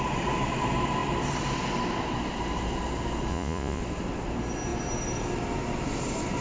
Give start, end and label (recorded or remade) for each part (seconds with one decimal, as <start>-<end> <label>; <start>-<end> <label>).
0.0-3.3 recorded; 3.3-3.8 remade; 3.8-6.4 recorded